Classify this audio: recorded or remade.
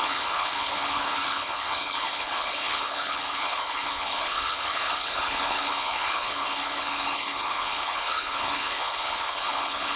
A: remade